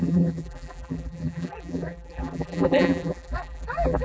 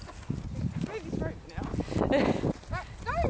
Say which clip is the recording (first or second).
second